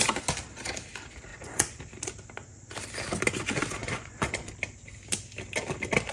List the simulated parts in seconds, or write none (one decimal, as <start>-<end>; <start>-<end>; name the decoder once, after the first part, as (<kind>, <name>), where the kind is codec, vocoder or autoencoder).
1.3-1.8 (vocoder, Vocos); 3.8-4.5